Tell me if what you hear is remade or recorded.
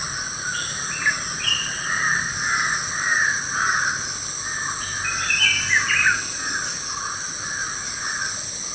recorded